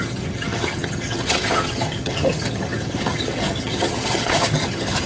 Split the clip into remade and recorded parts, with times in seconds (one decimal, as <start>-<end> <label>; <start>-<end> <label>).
0.0-5.1 remade